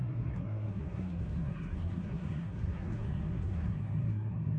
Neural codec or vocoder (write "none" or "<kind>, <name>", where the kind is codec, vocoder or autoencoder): codec, SNAC